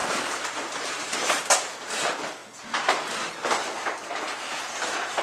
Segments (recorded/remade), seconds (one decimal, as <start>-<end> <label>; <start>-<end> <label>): 0.0-1.3 remade; 1.3-5.2 recorded